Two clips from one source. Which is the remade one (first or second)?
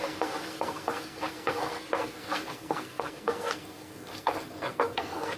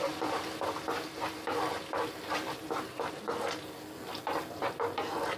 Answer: first